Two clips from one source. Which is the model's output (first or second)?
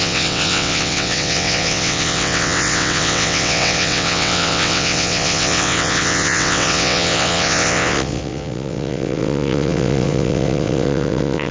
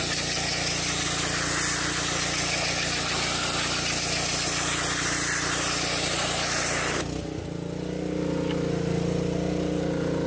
first